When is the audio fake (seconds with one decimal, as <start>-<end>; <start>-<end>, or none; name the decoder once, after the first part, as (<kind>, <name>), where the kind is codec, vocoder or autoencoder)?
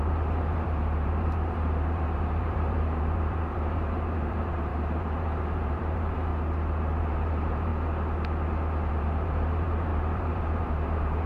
0.0-6.3 (vocoder, BigVGAN v2); 7.0-7.7; 8.9-11.3